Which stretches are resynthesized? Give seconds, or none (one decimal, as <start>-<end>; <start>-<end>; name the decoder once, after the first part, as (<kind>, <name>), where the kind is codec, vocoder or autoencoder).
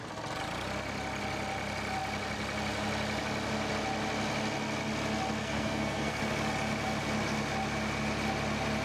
5.4-6.2 (codec, SNAC)